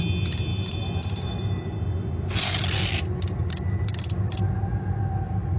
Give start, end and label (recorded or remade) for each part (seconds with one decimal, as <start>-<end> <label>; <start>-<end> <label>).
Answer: 0.0-5.6 recorded